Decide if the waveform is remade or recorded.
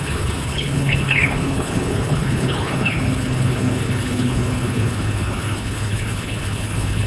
remade